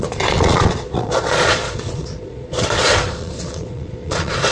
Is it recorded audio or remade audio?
remade